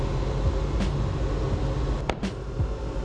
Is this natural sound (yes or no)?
yes